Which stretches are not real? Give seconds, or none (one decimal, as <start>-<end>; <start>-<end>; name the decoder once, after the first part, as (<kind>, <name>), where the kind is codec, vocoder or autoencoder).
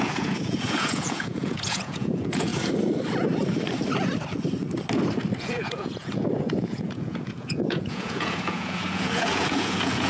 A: 0.0-2.5 (vocoder, Vocos); 5.4-10.1